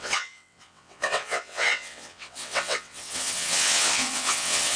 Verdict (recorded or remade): remade